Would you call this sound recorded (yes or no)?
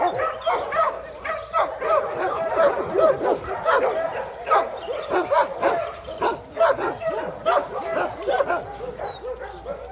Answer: yes